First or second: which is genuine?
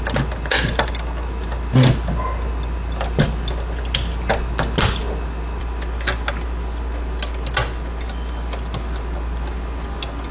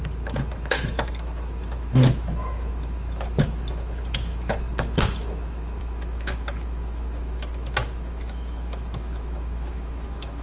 first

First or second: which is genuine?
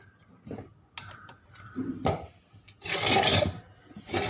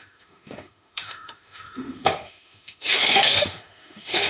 first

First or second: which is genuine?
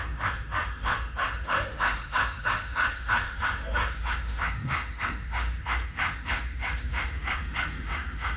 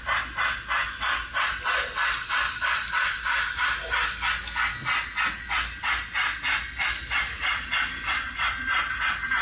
second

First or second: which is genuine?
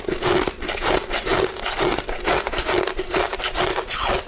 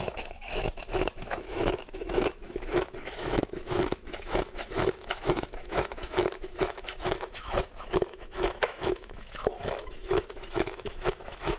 first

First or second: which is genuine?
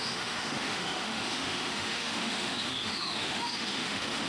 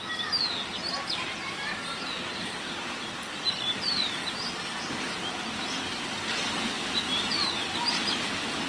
second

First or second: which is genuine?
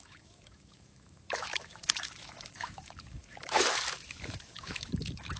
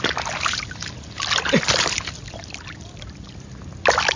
second